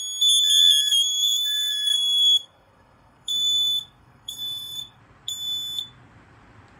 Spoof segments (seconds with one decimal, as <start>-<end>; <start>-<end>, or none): 0.9-5.0